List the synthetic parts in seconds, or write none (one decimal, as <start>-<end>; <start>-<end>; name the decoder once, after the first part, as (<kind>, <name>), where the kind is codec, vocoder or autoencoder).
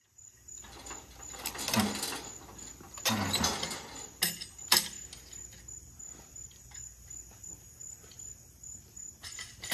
none